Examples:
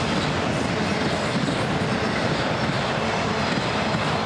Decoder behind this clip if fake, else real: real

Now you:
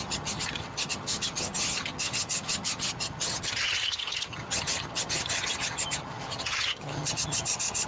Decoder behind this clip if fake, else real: fake, vocoder, HiFi-GAN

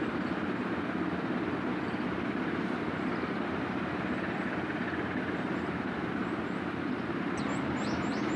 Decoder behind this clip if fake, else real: real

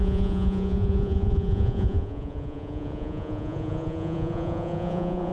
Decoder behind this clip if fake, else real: fake, vocoder, Vocos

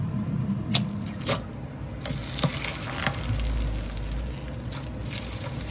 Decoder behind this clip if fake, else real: real